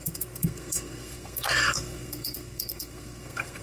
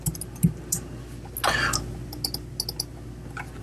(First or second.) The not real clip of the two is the first